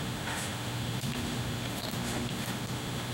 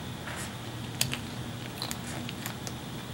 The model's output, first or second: first